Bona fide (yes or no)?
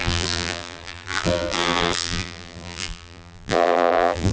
no